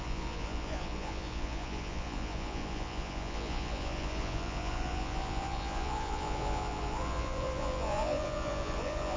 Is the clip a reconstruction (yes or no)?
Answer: yes